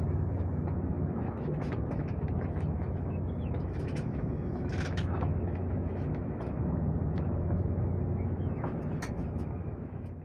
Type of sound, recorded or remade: remade